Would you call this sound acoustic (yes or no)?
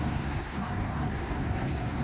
no